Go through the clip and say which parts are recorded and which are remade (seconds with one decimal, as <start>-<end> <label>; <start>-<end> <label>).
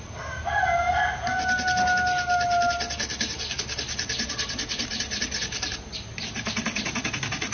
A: 0.0-7.5 recorded